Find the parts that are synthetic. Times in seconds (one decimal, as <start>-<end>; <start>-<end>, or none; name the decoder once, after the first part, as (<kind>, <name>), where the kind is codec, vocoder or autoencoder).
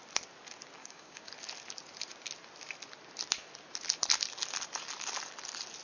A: 0.8-1.3 (codec, DAC)